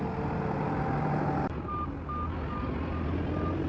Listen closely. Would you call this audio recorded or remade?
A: recorded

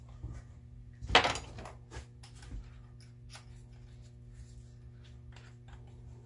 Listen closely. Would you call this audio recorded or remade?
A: recorded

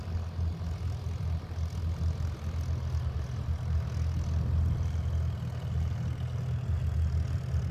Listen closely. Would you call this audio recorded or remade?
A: recorded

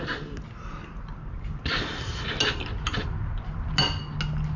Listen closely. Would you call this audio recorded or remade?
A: recorded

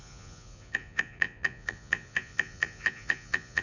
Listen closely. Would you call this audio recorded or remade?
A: remade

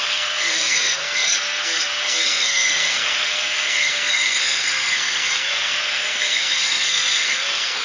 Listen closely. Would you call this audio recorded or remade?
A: remade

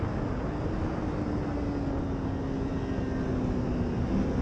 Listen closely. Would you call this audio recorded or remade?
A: recorded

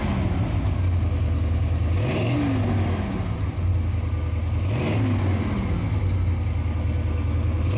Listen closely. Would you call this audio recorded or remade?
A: recorded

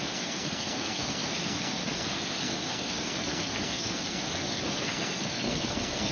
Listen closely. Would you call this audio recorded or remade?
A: remade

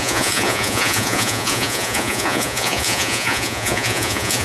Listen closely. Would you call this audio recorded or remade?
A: remade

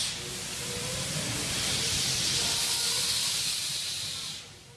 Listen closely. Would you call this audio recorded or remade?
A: recorded